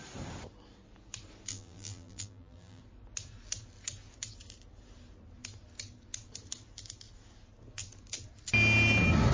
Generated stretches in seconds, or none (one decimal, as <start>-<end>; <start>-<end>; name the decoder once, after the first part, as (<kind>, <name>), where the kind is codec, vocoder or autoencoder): 1.5-2.8 (vocoder, BigVGAN v2)